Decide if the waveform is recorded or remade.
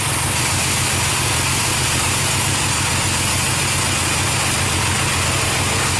recorded